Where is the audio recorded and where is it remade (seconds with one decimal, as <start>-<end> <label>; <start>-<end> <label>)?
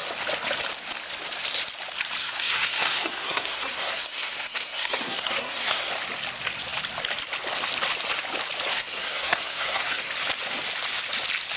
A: 0.0-2.2 recorded; 2.2-5.9 remade; 5.9-8.7 recorded; 8.7-10.1 remade; 10.1-11.6 recorded